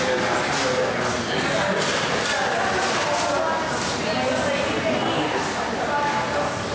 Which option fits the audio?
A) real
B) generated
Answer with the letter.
A